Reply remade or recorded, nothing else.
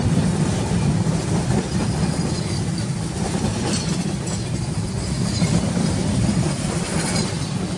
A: remade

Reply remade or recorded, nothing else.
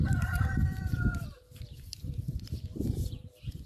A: remade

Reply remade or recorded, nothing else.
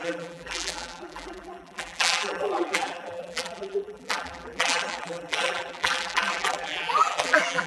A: remade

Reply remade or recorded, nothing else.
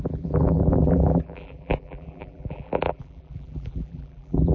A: remade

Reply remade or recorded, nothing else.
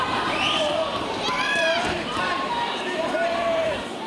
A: remade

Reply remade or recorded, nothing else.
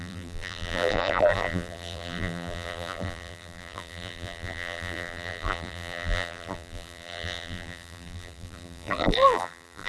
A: remade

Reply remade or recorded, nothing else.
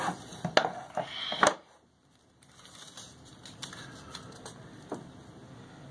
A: recorded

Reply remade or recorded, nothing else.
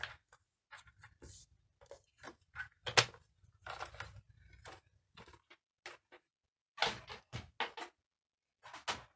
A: recorded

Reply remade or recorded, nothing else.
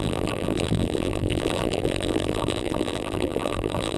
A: remade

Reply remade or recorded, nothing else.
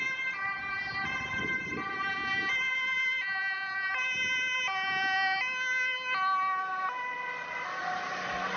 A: recorded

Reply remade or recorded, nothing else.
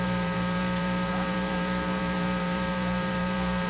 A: remade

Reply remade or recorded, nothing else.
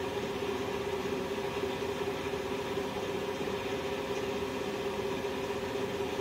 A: recorded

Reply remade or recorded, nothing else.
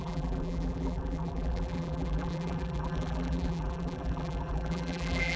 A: remade